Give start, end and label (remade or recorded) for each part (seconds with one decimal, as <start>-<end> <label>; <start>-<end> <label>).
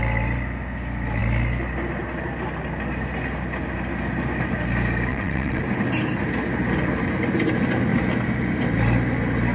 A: 0.0-5.1 recorded; 5.1-5.6 remade; 5.6-9.5 recorded